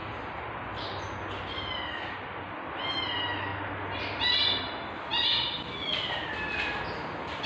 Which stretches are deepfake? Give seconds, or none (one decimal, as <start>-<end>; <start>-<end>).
none